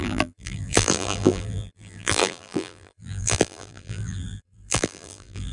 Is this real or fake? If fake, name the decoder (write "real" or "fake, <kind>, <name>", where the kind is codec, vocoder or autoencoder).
fake, vocoder, BigVGAN v2